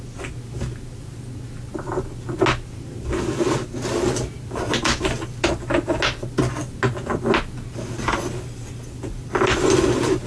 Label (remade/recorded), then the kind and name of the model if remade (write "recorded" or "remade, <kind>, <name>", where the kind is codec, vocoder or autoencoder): recorded